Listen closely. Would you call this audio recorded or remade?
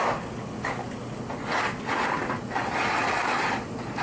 recorded